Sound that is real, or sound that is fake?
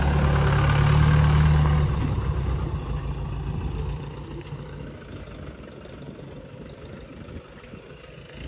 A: real